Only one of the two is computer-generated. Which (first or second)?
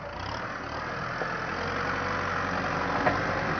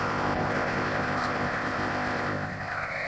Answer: second